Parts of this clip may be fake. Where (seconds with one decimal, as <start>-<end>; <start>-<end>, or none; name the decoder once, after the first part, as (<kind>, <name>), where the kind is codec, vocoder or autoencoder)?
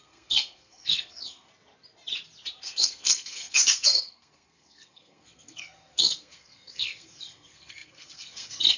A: 0.0-1.5 (codec, SNAC); 2.6-8.8